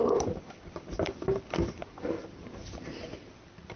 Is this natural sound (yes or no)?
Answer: yes